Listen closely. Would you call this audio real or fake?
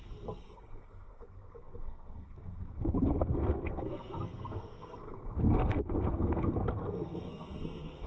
fake